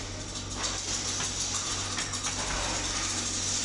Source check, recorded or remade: recorded